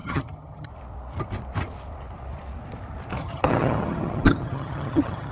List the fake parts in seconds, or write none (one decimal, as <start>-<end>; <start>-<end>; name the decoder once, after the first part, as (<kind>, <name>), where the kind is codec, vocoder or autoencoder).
0.0-0.7 (vocoder, HiFi-GAN); 3.2-5.3